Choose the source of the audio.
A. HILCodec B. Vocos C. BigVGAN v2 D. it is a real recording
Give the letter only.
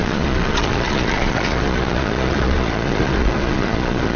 B